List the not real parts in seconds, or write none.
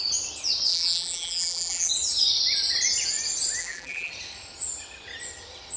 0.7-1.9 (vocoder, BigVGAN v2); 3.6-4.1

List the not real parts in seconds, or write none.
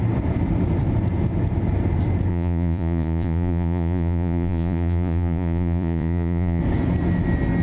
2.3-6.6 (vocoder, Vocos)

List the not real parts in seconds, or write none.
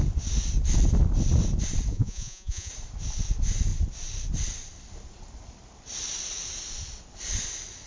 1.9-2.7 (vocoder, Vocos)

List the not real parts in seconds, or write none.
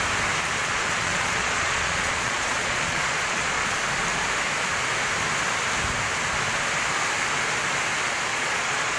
0.6-3.8 (vocoder, Vocos); 8.3-9.0